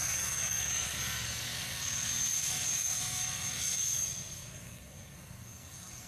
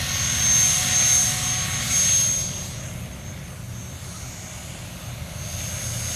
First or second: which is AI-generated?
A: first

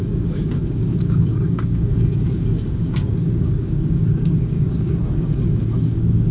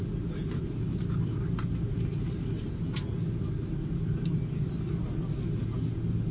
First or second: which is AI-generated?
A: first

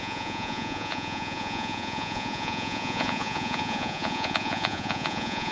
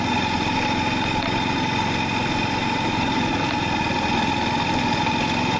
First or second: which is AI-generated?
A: first